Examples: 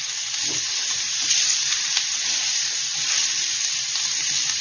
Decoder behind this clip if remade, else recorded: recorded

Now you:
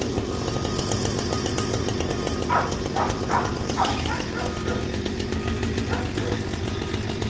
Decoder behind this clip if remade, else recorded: recorded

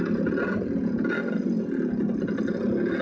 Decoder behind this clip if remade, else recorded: recorded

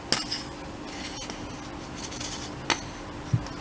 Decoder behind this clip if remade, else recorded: recorded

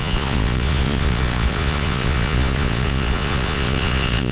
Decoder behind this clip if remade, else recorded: remade, vocoder, Vocos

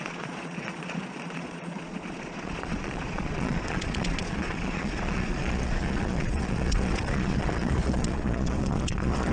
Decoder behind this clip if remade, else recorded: remade, vocoder, Vocos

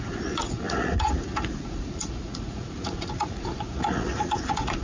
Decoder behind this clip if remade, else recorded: remade, vocoder, Vocos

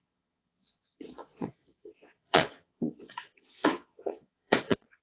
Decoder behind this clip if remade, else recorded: remade, vocoder, Vocos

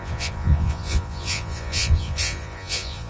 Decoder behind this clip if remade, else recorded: remade, vocoder, Vocos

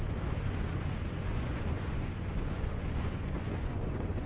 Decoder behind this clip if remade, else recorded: remade, vocoder, Vocos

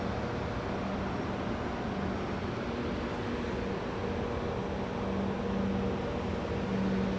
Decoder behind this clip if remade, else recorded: recorded